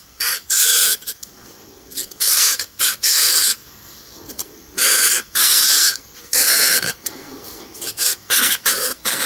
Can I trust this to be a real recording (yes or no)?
no